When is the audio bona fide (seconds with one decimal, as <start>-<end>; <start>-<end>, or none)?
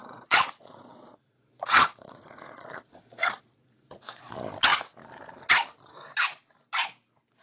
4.2-7.4